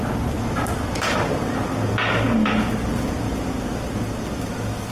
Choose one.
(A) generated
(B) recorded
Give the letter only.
B